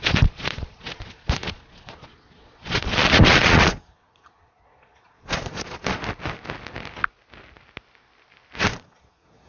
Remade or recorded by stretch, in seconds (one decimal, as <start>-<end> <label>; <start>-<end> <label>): 0.0-6.0 remade; 6.0-8.6 recorded; 8.6-9.5 remade